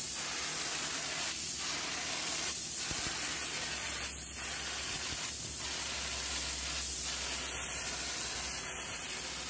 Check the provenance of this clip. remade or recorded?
recorded